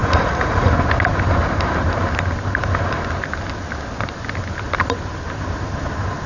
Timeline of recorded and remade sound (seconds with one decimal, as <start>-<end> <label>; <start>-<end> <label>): 0.0-0.7 remade; 0.7-6.3 recorded